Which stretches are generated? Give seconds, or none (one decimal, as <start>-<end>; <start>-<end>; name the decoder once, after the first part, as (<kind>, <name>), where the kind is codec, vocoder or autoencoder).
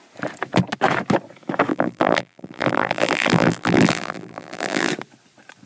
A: 1.7-4.9 (vocoder, BigVGAN v2)